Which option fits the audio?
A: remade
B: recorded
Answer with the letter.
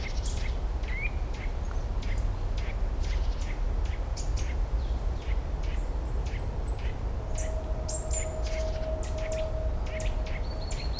B